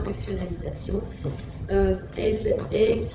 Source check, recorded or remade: remade